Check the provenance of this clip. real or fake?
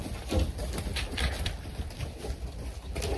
fake